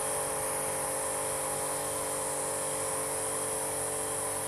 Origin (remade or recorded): recorded